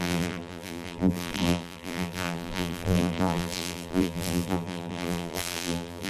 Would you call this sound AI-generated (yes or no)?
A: yes